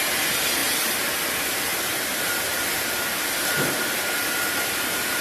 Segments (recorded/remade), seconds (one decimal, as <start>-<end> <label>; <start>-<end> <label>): 0.0-5.2 remade